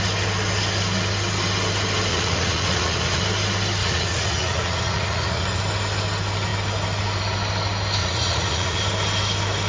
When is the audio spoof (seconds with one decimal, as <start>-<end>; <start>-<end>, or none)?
2.1-3.2; 3.8-5.6; 8.0-8.8